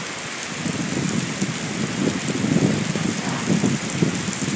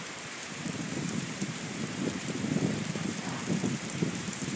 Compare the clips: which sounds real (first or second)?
first